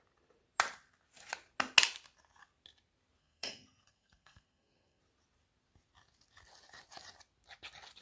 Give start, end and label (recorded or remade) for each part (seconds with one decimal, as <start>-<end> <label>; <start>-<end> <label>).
0.0-3.2 recorded; 3.2-5.0 remade; 5.0-8.0 recorded